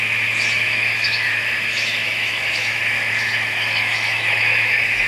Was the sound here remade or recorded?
remade